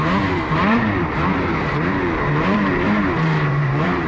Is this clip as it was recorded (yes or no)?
no